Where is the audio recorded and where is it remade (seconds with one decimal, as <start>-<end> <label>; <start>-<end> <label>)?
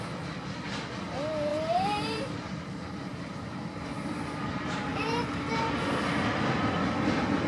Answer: 0.0-1.5 recorded; 1.5-5.7 remade; 5.7-7.5 recorded